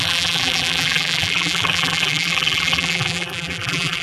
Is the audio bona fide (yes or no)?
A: no